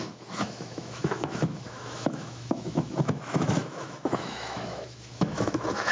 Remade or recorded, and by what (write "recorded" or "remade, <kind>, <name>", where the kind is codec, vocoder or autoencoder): remade, autoencoder, DAC-VAE